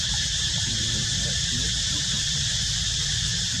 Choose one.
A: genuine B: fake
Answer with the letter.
A